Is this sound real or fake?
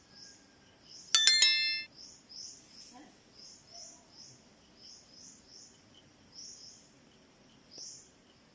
real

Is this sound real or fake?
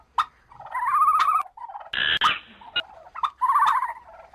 real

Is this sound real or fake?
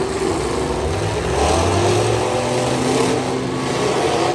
real